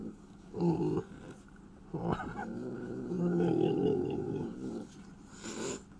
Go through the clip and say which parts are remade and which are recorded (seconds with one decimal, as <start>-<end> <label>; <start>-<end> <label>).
0.0-0.8 remade; 0.8-2.4 recorded; 2.4-4.9 remade; 4.9-6.0 recorded